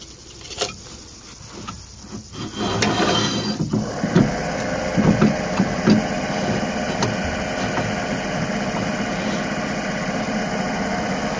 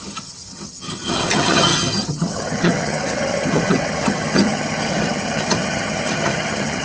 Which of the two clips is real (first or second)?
first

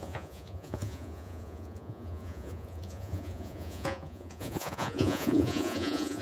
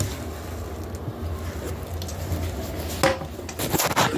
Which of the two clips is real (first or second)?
second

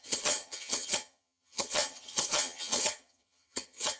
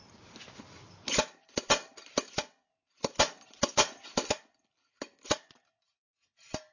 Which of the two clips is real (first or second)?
second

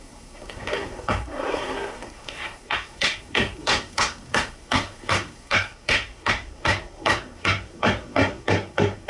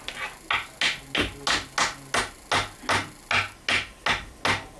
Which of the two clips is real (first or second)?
second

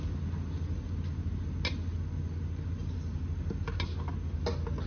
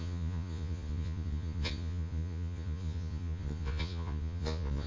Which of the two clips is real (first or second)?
first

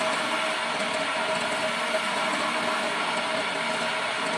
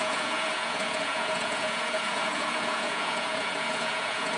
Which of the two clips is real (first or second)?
first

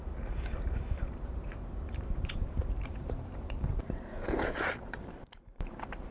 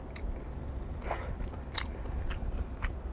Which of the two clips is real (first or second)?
second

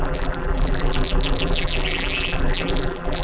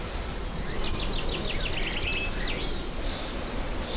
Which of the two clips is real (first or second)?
second